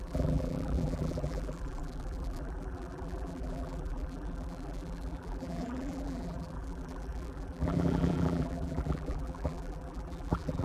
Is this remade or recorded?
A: remade